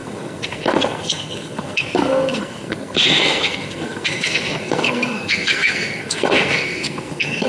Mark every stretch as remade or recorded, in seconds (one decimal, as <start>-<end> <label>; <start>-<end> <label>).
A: 0.0-7.5 remade